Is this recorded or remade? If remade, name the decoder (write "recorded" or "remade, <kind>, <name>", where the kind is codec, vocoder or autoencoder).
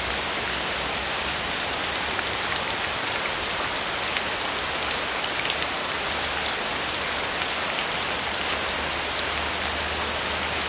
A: recorded